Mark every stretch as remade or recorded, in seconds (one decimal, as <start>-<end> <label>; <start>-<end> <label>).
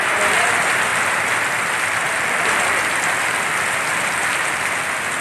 0.0-5.2 recorded